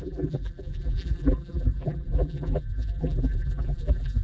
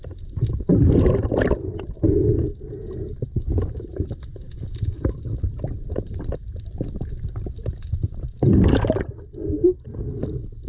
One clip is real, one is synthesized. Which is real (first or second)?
second